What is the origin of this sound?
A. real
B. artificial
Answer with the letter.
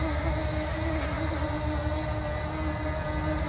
A